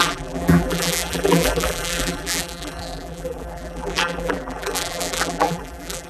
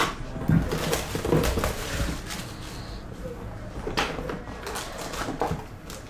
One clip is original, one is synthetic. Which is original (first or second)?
second